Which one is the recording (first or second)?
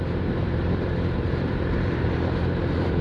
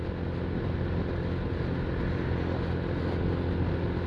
second